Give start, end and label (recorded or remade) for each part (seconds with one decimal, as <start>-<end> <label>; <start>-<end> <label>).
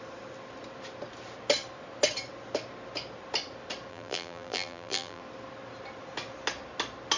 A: 0.0-3.9 recorded; 3.9-5.2 remade; 5.2-7.2 recorded